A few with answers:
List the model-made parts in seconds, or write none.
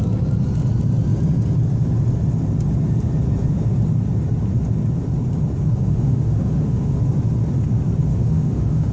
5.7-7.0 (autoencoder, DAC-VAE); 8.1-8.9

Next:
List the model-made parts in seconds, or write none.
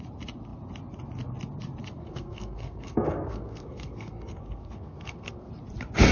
2.0-5.5 (codec, SNAC)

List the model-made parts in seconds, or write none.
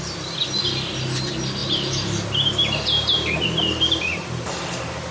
1.6-5.1 (vocoder, BigVGAN v2)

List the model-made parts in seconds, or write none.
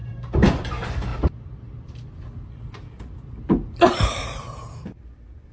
0.0-0.7 (vocoder, BigVGAN v2)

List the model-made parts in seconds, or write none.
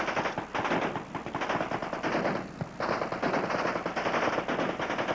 none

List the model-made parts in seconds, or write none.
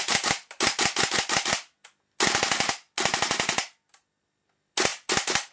none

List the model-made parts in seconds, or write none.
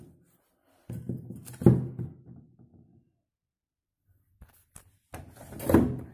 none